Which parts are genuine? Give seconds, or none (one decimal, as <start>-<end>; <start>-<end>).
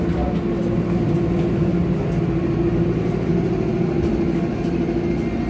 0.0-5.5